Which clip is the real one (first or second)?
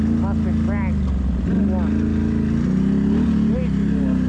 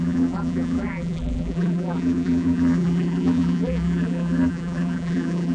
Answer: first